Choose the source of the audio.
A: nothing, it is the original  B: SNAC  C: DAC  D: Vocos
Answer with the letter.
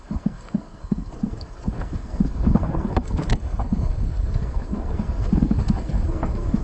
B